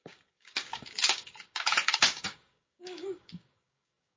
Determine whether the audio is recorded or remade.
remade